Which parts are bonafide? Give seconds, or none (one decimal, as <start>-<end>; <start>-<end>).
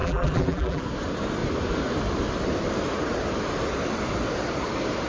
0.8-5.1